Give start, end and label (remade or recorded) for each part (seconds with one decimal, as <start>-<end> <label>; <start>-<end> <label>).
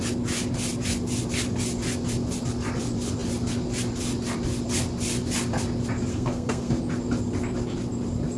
0.0-6.1 recorded; 6.1-6.8 remade; 6.8-8.4 recorded